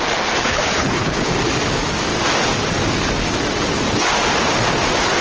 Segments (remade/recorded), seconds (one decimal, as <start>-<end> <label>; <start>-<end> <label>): 0.0-0.4 recorded; 0.4-1.3 remade; 1.3-5.2 recorded